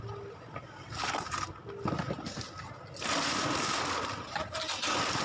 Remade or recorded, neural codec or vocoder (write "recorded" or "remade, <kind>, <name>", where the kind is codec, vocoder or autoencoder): recorded